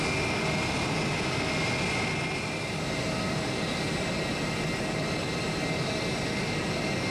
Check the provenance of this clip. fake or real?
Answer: real